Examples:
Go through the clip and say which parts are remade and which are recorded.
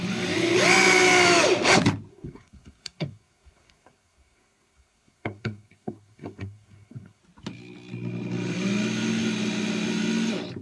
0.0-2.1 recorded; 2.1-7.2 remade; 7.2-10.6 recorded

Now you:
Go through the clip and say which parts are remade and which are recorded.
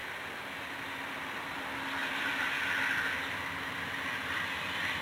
0.0-5.0 recorded